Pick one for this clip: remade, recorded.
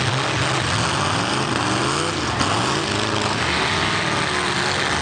recorded